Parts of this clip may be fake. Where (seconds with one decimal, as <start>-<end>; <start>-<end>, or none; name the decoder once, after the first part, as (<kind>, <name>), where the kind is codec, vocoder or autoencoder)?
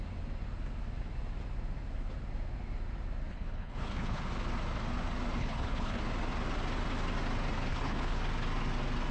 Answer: 3.3-4.2 (codec, HILCodec); 5.4-6.0; 7.7-8.2